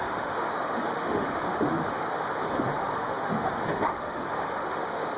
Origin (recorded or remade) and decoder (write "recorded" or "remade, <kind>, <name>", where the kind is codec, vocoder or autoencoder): remade, autoencoder, DAC-VAE